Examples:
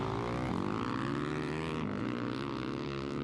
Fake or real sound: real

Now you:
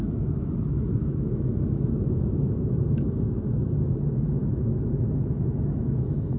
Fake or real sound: fake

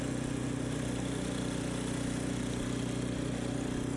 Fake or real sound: real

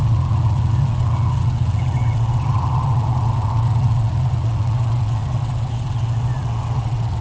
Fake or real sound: fake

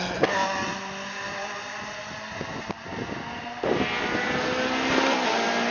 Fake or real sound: real